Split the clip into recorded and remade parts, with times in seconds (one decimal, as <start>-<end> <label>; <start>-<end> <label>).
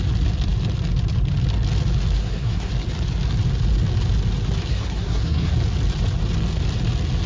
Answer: 0.0-2.2 recorded; 2.2-2.7 remade; 2.7-4.7 recorded; 4.7-5.5 remade; 5.5-7.3 recorded